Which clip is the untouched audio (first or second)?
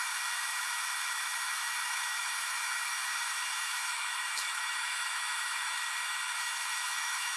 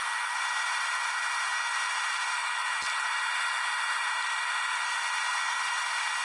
second